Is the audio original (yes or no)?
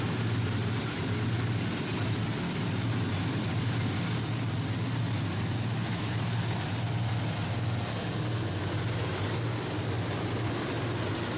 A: yes